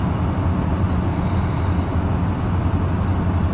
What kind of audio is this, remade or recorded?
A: recorded